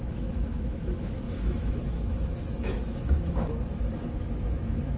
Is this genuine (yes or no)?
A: no